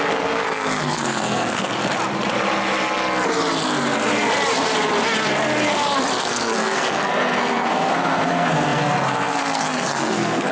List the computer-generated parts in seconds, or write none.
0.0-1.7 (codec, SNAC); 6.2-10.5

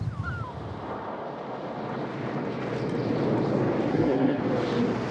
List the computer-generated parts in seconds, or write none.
3.9-4.4 (codec, SNAC)